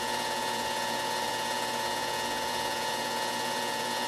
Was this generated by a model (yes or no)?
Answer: yes